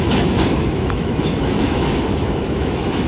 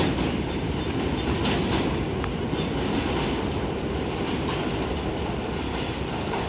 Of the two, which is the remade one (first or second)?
first